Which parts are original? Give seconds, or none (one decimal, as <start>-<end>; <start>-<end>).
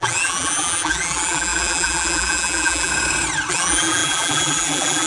2.9-3.5